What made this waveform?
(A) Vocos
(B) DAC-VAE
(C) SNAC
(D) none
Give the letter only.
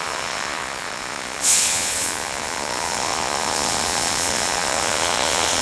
A